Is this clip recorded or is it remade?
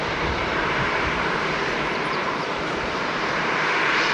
remade